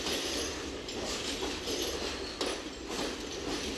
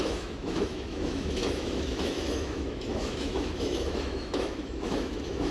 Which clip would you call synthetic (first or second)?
second